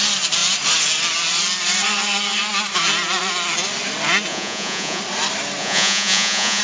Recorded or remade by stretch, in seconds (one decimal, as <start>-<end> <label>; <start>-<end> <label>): 0.0-4.3 recorded; 4.3-5.0 remade; 5.0-5.6 recorded; 5.6-6.6 remade